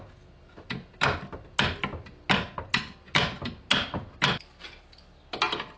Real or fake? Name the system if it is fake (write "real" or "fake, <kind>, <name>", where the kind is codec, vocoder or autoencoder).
real